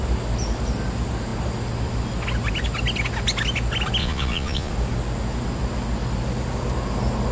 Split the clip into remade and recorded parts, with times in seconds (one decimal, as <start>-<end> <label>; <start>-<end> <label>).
0.0-4.0 recorded; 4.0-4.7 remade; 4.7-7.3 recorded